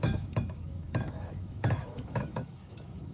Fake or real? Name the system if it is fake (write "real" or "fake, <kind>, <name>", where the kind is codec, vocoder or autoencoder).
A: fake, autoencoder, DAC-VAE